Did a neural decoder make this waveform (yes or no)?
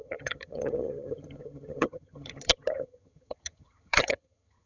yes